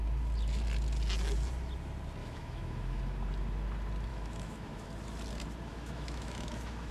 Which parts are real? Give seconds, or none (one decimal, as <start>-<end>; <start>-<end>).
0.0-2.2; 3.0-4.1; 4.9-5.7